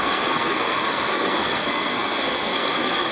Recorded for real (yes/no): no